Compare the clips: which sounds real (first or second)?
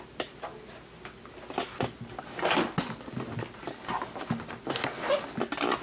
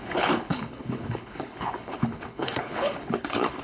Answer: first